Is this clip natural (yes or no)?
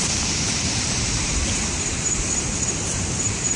no